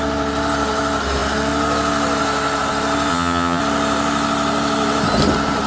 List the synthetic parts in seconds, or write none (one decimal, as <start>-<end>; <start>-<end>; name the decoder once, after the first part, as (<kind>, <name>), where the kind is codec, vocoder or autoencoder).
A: 3.1-3.6 (vocoder, HiFi-GAN)